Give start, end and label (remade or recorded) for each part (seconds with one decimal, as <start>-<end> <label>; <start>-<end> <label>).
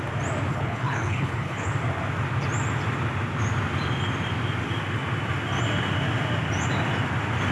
0.0-0.5 recorded; 0.5-1.7 remade; 1.7-7.5 recorded